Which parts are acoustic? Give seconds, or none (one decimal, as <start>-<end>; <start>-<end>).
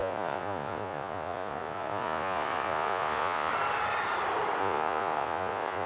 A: 3.5-4.6